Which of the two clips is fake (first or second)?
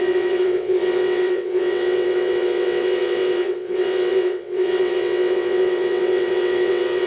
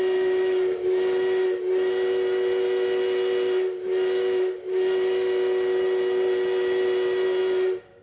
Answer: first